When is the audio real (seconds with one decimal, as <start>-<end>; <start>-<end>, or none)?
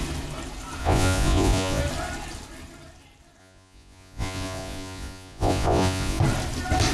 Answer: 0.0-0.8; 1.8-3.4; 6.2-6.9